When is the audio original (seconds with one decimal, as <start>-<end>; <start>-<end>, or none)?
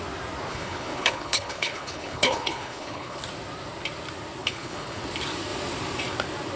0.0-0.5; 3.2-4.4; 5.0-6.6